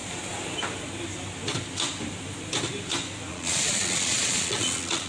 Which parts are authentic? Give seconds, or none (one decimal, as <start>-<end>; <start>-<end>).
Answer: 0.0-3.3